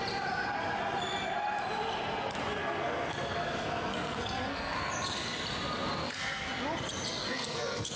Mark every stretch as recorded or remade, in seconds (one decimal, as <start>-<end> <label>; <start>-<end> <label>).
0.0-2.6 recorded; 2.6-4.9 remade; 4.9-6.0 recorded; 6.0-6.5 remade; 6.5-7.2 recorded; 7.2-8.0 remade